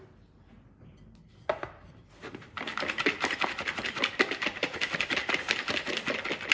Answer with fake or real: real